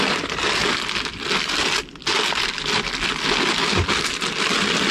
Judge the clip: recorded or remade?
recorded